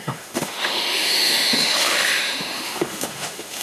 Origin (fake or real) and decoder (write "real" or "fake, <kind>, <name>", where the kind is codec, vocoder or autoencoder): fake, autoencoder, DAC-VAE